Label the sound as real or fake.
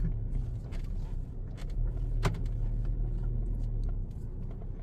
real